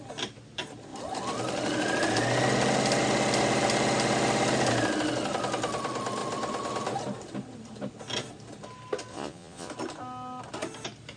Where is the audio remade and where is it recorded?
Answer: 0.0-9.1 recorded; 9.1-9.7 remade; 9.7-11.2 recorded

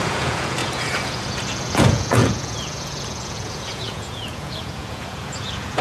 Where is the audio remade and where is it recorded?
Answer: 0.0-5.8 remade

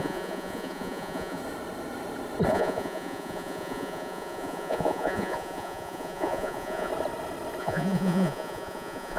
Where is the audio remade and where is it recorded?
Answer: 0.0-1.4 remade; 1.4-2.5 recorded; 2.5-6.9 remade; 6.9-7.6 recorded; 7.6-9.2 remade

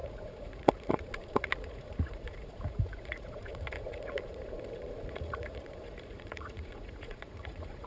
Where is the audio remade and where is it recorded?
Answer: 0.0-7.9 remade